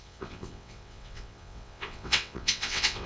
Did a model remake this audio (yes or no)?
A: yes